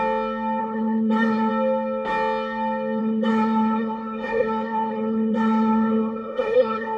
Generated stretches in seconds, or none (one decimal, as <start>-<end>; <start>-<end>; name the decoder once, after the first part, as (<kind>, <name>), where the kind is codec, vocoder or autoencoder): 0.6-1.5 (codec, SNAC); 3.0-7.0